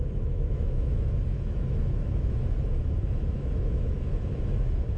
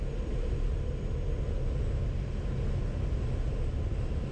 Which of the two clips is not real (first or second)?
first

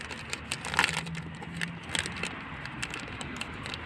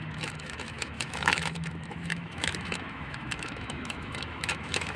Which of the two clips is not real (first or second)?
second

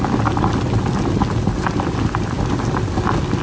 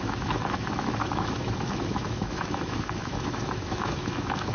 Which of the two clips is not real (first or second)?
second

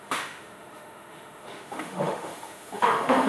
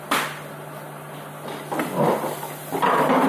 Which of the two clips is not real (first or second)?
first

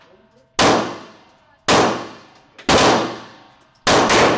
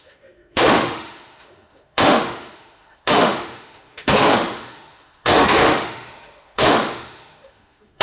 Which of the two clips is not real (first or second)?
second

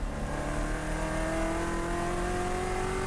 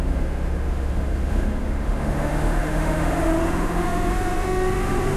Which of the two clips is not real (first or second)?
second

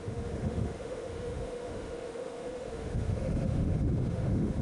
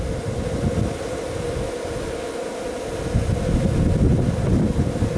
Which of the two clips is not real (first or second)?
first